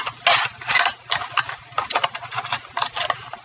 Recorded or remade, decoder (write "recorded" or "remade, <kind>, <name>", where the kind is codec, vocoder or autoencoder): recorded